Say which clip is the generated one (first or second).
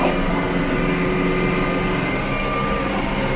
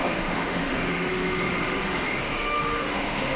second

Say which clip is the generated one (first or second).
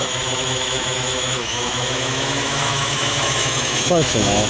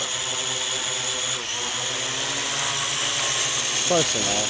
first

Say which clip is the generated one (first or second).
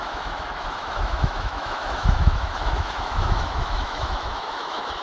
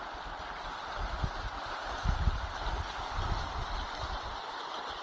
first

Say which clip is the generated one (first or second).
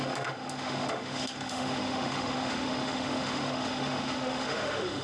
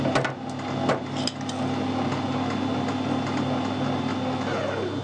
first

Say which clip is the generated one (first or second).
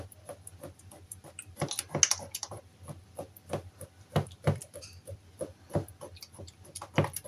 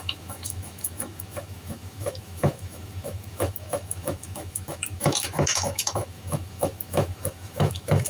second